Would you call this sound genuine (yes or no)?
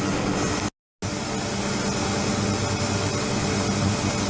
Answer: yes